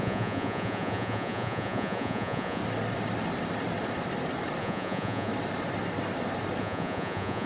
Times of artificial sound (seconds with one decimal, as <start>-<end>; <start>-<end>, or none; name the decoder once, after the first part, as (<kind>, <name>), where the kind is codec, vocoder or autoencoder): 0.0-2.6 (vocoder, Vocos); 4.6-5.3; 6.6-7.5